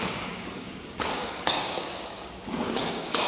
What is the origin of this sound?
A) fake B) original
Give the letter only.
A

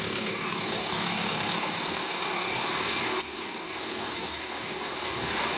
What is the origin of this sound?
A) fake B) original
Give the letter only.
A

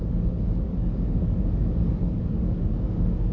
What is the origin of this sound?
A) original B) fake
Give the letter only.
B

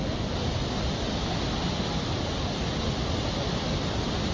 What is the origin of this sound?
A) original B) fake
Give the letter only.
A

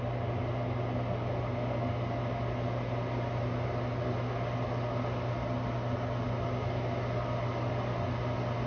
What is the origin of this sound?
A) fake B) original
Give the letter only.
B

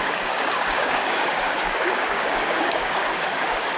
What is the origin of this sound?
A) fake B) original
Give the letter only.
A